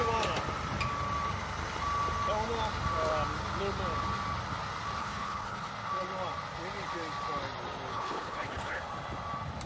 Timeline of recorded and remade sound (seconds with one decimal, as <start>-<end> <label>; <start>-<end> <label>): 0.0-5.0 recorded; 5.0-5.7 remade; 5.7-7.9 recorded; 7.9-8.8 remade; 8.8-9.7 recorded